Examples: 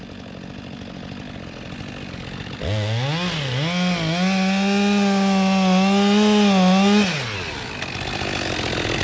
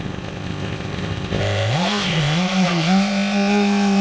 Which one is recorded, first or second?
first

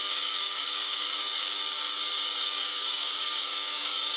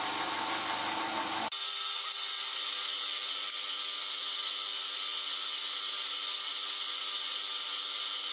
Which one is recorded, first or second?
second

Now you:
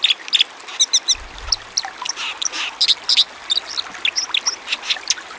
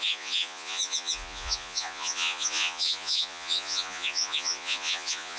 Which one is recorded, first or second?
first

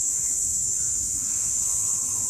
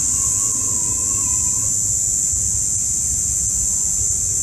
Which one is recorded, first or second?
second